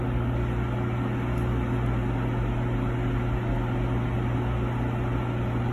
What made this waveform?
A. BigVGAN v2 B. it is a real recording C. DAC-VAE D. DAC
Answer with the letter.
B